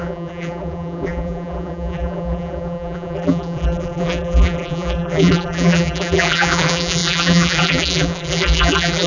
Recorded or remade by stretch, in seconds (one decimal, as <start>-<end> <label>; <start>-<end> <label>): 0.0-9.1 remade

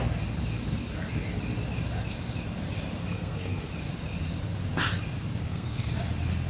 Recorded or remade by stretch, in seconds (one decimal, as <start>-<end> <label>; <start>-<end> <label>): 0.0-3.0 recorded; 3.0-3.7 remade; 3.7-5.4 recorded; 5.4-5.9 remade; 5.9-6.5 recorded

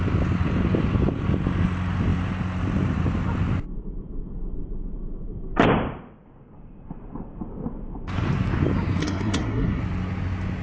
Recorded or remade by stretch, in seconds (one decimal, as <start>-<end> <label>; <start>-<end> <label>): 0.0-9.0 recorded; 9.0-9.8 remade; 9.8-10.6 recorded

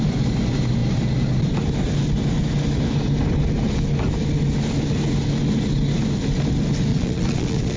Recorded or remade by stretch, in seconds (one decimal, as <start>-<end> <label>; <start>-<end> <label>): 0.0-6.9 recorded; 6.9-7.8 remade

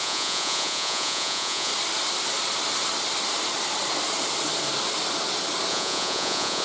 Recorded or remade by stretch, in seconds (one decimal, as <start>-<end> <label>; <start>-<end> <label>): 0.0-1.7 remade; 1.7-5.7 recorded; 5.7-6.6 remade

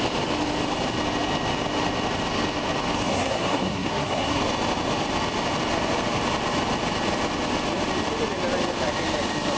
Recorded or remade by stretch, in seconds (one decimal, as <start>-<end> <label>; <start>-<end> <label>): 0.0-3.1 recorded; 3.1-4.4 remade; 4.4-9.6 recorded

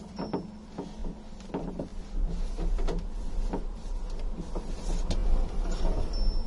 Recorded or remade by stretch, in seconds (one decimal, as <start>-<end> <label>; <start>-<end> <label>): 0.0-6.5 recorded

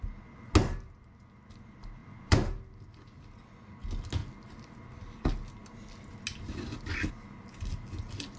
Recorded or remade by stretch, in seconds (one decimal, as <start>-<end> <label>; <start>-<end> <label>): 0.0-2.0 recorded; 2.0-3.5 remade; 3.5-8.4 recorded